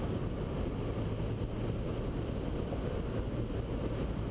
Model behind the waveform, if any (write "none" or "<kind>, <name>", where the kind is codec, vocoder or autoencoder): none